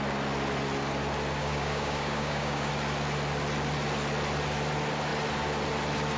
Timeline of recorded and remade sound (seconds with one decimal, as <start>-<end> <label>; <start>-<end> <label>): 0.0-1.4 recorded; 1.4-2.7 remade; 2.7-6.2 recorded

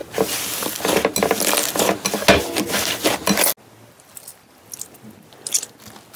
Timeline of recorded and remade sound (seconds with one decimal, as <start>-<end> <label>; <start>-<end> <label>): 0.0-6.2 recorded